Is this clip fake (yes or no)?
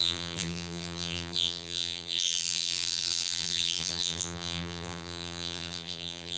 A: yes